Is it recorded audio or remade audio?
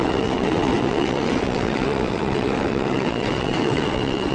remade